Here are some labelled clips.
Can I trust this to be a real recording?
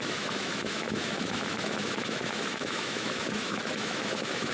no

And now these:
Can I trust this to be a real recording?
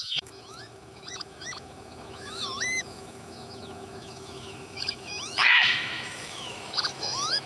no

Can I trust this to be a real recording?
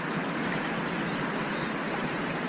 yes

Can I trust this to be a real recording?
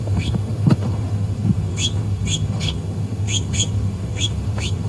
no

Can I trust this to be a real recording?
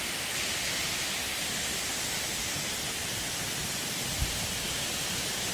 yes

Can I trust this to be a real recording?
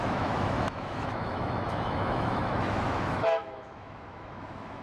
no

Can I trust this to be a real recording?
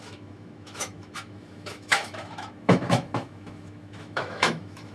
no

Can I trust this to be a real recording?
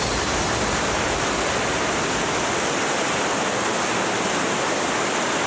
yes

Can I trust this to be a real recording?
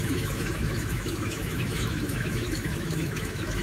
no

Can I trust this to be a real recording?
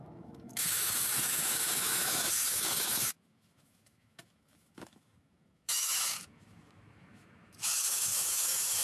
no